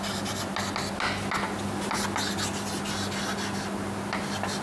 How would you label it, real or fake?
real